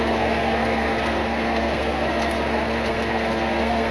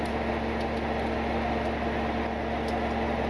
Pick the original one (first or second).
second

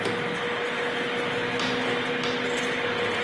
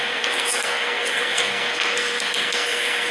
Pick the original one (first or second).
first